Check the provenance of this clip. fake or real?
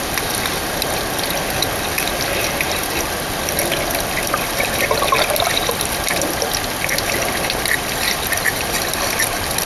real